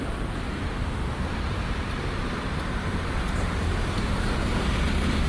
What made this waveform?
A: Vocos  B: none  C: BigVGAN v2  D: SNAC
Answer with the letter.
C